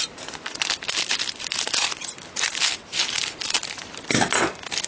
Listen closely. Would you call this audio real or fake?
real